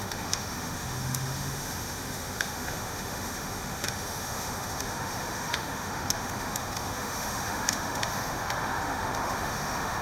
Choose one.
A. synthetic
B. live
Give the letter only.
A